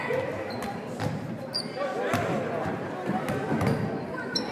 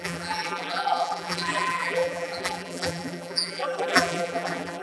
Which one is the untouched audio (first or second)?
first